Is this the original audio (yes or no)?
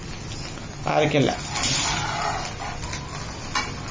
yes